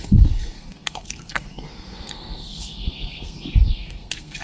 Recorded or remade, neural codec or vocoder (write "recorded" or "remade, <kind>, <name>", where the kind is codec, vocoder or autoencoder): remade, codec, SNAC